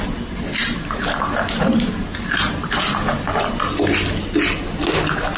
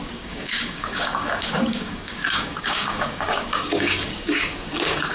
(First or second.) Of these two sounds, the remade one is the second